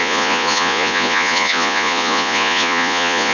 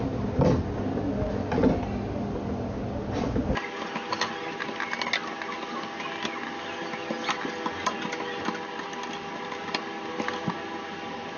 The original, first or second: second